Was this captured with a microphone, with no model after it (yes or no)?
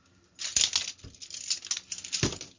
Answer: yes